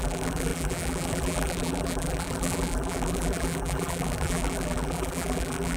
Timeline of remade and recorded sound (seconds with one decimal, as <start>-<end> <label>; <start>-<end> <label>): 0.0-5.8 remade